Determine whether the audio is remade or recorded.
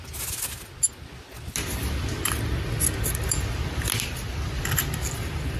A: recorded